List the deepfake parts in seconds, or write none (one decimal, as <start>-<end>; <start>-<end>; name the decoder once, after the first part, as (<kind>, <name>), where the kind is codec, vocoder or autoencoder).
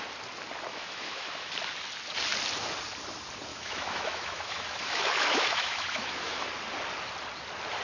0.7-1.5 (autoencoder, DAC-VAE); 3.5-6.5